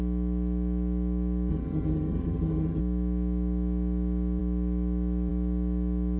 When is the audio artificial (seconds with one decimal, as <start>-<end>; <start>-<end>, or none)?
1.5-2.8